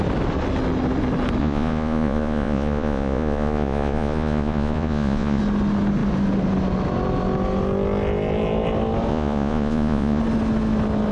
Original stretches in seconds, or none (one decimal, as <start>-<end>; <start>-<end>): 0.0-1.4; 5.4-9.1; 10.2-11.1

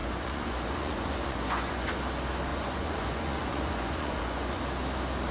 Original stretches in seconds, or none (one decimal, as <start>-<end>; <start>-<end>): 1.9-2.5; 4.6-5.3

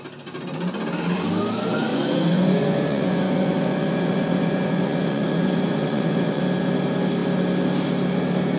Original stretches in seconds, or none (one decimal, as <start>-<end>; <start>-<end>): 0.0-1.9; 6.4-8.6

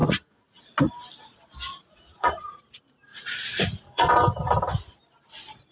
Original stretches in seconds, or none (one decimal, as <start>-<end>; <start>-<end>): 0.6-1.7; 2.6-3.1; 4.1-5.7

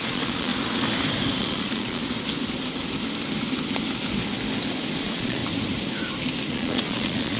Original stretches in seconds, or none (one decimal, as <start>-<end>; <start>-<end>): 0.5-1.4; 2.0-5.0; 5.4-6.5

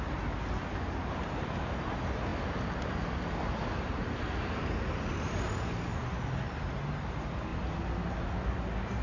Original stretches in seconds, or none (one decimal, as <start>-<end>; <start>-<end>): 0.0-9.0

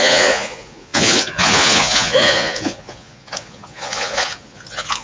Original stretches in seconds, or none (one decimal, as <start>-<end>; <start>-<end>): none